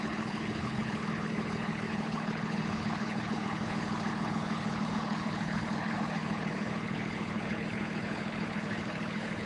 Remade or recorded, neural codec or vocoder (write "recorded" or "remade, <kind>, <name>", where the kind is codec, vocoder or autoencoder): remade, codec, HILCodec